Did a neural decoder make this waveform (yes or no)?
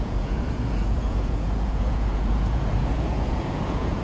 yes